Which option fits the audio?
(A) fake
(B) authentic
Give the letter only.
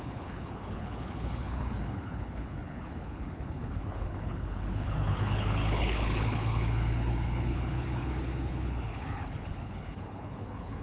A